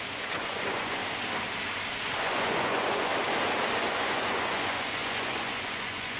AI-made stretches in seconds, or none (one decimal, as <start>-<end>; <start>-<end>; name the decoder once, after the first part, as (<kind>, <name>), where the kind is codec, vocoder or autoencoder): 0.0-1.0 (vocoder, Vocos); 2.0-3.1; 3.8-6.2